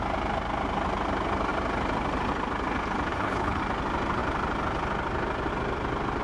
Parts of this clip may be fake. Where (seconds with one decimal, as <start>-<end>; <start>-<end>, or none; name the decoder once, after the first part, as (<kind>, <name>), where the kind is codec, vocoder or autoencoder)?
3.1-3.6 (codec, HILCodec)